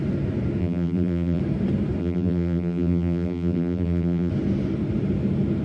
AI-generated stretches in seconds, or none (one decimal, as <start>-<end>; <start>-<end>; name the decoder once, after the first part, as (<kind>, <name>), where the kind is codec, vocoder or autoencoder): 0.6-1.4 (vocoder, BigVGAN v2); 2.0-4.3